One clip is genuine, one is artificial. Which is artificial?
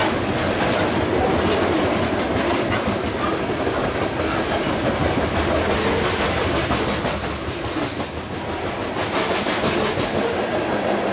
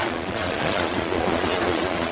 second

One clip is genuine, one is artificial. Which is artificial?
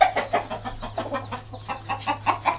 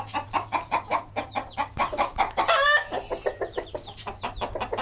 second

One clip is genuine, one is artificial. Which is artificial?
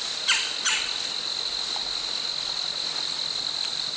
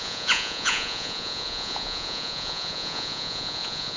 second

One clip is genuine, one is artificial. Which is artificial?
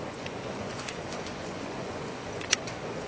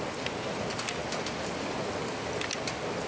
first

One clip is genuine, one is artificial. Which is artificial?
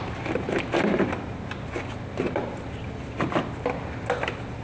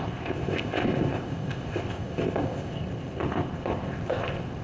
second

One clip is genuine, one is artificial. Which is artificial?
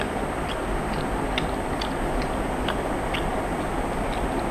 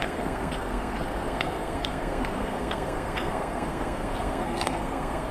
second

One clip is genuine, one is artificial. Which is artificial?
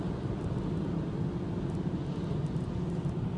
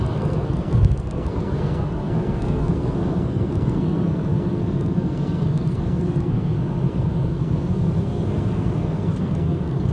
second